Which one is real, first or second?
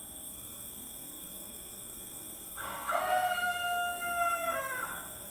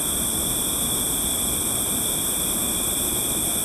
second